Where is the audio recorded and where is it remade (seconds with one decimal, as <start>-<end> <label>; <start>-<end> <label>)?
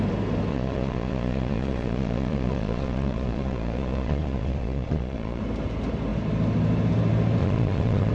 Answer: 0.0-0.5 recorded; 0.5-5.4 remade; 5.4-7.4 recorded; 7.4-8.1 remade